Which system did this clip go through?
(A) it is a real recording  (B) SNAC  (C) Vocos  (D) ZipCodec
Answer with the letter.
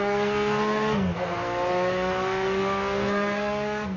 B